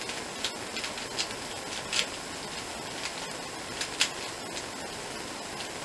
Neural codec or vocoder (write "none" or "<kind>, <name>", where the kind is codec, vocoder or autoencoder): none